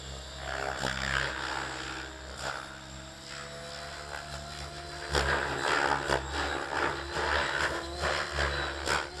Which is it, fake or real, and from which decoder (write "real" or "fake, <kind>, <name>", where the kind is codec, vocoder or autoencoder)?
real